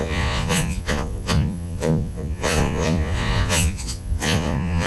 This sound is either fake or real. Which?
fake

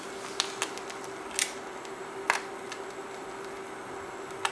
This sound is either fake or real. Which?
real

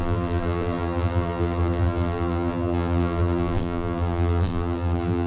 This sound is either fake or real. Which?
fake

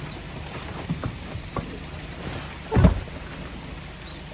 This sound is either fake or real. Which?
real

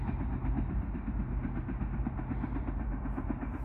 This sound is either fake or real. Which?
real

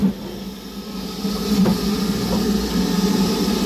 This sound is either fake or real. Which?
real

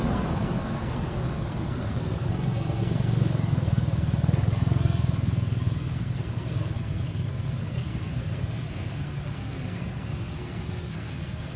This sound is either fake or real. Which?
fake